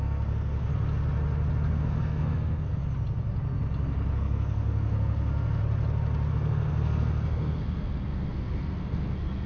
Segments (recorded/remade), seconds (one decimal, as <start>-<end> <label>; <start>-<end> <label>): 0.0-0.7 remade; 0.7-1.7 recorded; 1.7-2.8 remade; 2.8-4.1 recorded; 4.1-5.6 remade; 5.6-6.3 recorded; 6.3-9.5 remade